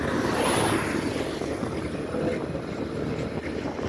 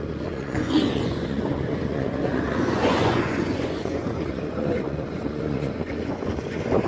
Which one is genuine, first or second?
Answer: first